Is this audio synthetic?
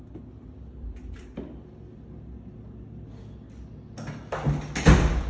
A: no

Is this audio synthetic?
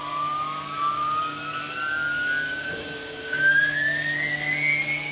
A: yes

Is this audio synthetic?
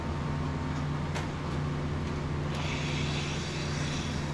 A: no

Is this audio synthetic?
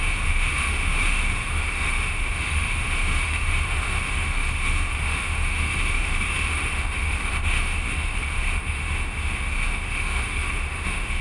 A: yes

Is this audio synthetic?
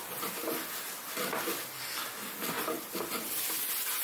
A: no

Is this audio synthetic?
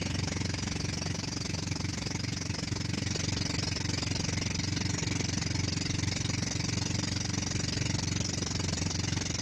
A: no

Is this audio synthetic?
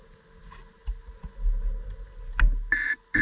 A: no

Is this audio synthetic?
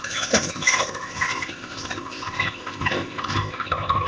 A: yes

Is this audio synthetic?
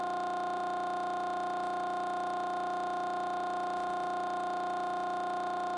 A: no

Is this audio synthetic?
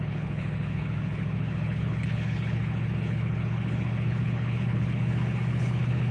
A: yes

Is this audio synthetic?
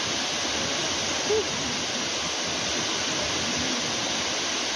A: no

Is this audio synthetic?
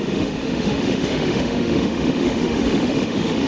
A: yes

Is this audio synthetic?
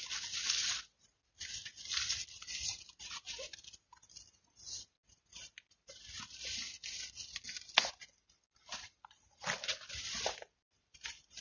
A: no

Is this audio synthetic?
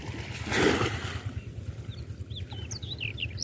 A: no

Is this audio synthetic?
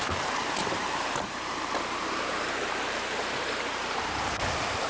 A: yes